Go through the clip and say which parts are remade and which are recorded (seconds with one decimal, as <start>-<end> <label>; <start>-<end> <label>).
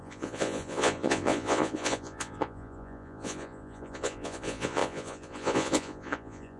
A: 0.0-6.6 remade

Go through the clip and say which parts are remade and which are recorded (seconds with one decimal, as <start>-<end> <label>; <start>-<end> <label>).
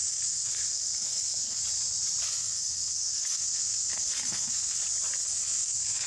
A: 0.0-1.6 remade; 1.6-2.3 recorded; 2.3-4.8 remade; 4.8-5.2 recorded; 5.2-6.1 remade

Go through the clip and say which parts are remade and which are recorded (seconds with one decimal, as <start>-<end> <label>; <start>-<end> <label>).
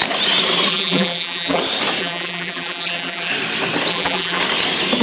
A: 0.0-0.7 recorded; 0.7-1.6 remade; 1.6-2.0 recorded; 2.0-3.3 remade; 3.3-3.9 recorded; 3.9-4.4 remade; 4.4-5.0 recorded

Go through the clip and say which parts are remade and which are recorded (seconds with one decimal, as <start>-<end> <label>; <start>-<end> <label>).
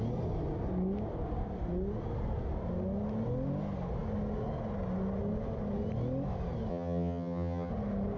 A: 0.0-6.7 recorded; 6.7-7.7 remade; 7.7-8.2 recorded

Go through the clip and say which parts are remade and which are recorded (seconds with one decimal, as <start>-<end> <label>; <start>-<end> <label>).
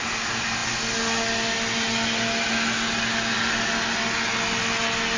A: 0.0-5.2 recorded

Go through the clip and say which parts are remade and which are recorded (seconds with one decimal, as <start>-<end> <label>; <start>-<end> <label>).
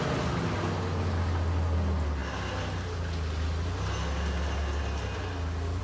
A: 0.0-5.8 recorded